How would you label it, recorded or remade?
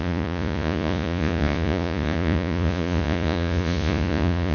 remade